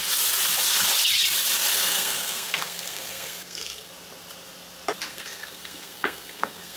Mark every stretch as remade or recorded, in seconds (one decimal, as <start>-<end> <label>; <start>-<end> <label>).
0.0-1.7 recorded; 1.7-3.9 remade; 3.9-5.1 recorded; 5.1-6.8 remade